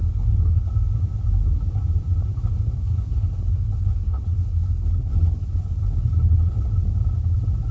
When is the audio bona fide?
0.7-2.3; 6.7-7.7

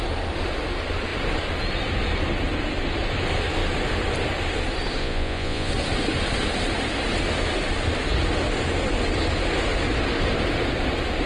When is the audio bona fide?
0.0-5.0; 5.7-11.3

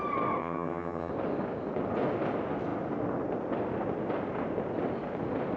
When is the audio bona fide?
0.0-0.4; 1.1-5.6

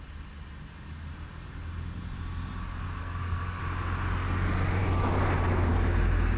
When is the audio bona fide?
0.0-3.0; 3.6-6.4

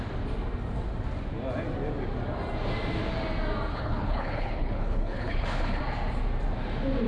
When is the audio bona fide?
0.0-3.7; 5.8-7.1

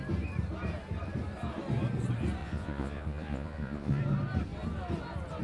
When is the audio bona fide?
0.0-2.4; 4.0-5.4

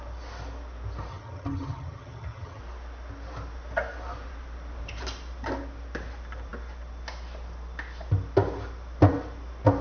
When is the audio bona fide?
0.0-1.1; 2.6-9.8

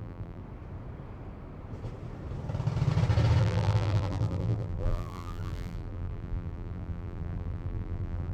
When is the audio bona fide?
0.4-3.4